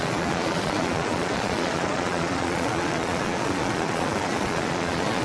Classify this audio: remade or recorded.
remade